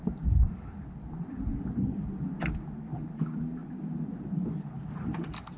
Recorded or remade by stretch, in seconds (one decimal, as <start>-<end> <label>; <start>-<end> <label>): 0.0-5.6 recorded